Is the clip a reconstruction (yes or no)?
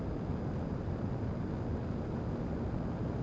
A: no